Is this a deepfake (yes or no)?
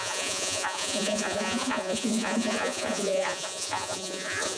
yes